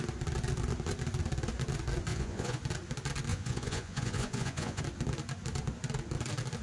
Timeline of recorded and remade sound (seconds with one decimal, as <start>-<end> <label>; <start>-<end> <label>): 0.0-2.1 recorded; 2.1-2.6 remade; 2.6-3.3 recorded; 3.3-4.8 remade; 4.8-6.6 recorded